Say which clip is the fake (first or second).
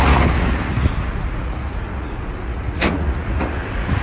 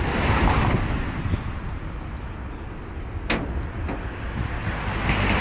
first